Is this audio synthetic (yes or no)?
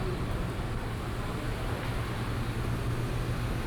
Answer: no